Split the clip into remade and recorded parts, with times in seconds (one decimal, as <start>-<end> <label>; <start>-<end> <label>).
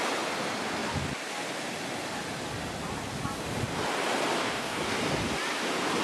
0.0-4.4 recorded; 4.4-4.9 remade; 4.9-6.0 recorded